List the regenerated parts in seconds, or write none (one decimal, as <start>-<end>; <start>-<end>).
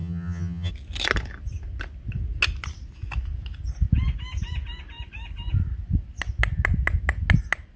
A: 0.0-0.7